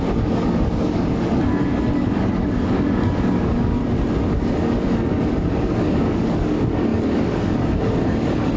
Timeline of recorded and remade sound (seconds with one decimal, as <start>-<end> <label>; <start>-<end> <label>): 0.0-3.8 remade; 3.8-4.3 recorded; 4.3-8.6 remade